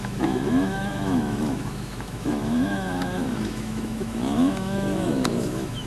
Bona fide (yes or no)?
no